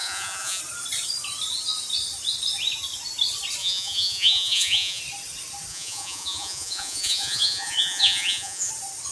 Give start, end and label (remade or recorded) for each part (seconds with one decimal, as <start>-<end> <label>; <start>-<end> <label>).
0.0-0.6 remade; 0.6-3.6 recorded; 3.6-5.0 remade; 5.0-5.7 recorded; 5.7-8.7 remade; 8.7-9.1 recorded